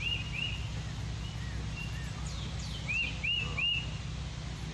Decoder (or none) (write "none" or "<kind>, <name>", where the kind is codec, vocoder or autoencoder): none